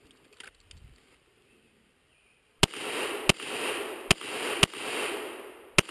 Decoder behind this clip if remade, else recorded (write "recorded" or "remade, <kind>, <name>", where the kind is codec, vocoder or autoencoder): recorded